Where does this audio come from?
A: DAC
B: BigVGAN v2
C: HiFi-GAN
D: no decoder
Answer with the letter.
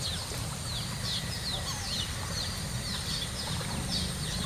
D